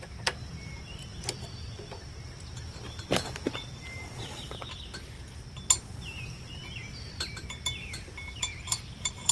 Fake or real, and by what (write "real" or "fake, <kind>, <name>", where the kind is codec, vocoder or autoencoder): real